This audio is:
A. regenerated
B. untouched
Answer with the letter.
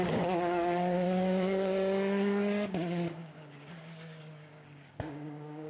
A